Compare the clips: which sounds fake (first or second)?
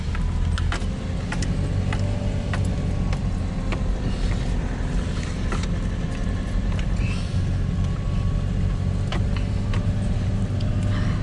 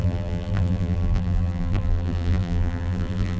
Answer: second